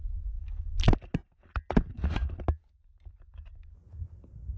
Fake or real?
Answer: real